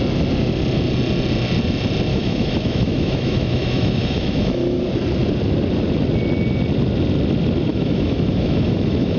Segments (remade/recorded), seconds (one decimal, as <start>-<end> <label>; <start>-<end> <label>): 0.0-2.1 recorded; 2.1-4.8 remade; 4.8-7.7 recorded; 7.7-9.2 remade